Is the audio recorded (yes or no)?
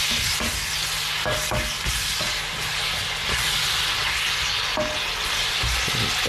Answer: yes